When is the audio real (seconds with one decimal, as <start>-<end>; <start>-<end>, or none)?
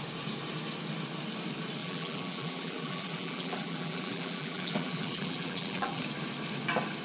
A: 0.0-1.8; 6.0-7.0